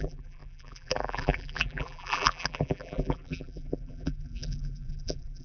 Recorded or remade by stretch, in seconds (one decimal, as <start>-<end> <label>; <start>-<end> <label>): 0.0-5.4 remade